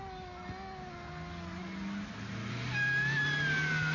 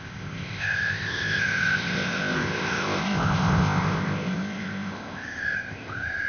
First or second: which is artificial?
second